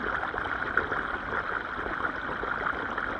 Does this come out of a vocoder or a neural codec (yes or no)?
no